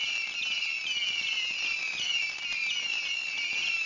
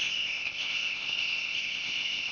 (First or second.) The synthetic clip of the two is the second